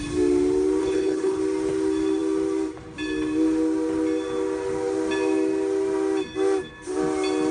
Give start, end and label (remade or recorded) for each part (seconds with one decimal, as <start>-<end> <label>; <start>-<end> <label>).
0.0-0.8 recorded; 0.8-1.4 remade; 1.4-7.5 recorded